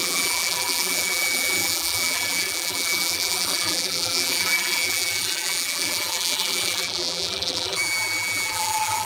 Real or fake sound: fake